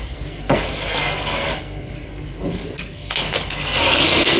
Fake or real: fake